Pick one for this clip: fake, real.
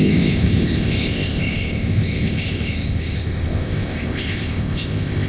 fake